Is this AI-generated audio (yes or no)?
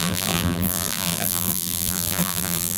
yes